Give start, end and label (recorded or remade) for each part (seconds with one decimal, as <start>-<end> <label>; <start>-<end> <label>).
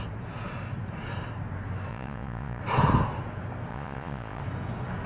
0.0-1.9 recorded; 1.9-2.6 remade; 2.6-3.7 recorded; 3.7-4.4 remade; 4.4-5.1 recorded